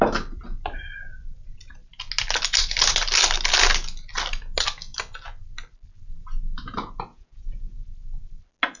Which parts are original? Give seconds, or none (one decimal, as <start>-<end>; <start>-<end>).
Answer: 0.0-7.1; 7.8-8.8